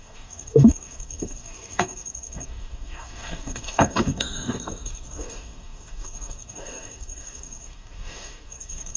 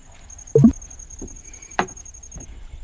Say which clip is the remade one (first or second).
first